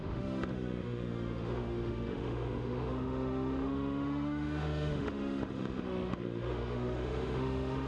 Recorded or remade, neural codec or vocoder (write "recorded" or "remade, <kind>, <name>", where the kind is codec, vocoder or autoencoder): remade, autoencoder, DAC-VAE